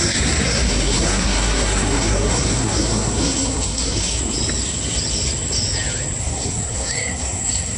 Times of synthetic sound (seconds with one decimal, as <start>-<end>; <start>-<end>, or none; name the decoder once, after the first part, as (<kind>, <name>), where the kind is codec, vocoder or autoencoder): 0.0-4.2 (codec, SNAC); 6.2-7.8